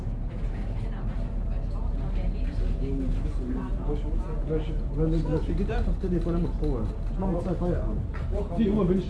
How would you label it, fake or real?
real